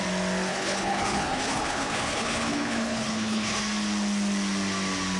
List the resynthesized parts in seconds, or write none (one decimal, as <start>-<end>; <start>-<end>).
0.5-3.6